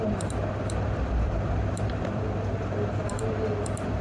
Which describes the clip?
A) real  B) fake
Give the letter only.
B